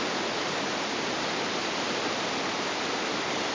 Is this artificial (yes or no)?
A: no